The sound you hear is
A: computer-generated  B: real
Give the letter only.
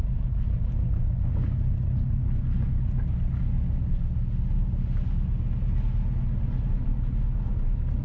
B